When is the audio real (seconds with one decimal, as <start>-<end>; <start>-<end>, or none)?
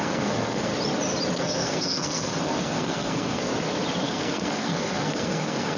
0.7-1.3; 3.5-4.0